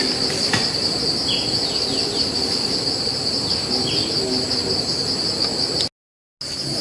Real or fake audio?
real